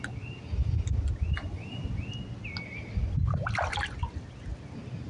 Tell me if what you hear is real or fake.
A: real